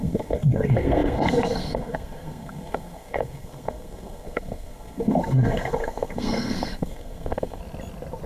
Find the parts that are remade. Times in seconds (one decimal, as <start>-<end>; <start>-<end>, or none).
0.0-7.6